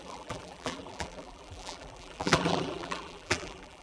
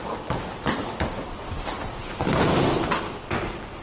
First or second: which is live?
second